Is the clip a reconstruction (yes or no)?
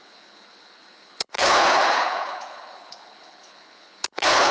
yes